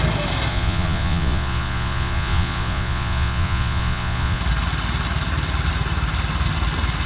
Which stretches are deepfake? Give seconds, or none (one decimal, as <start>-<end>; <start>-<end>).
0.5-4.4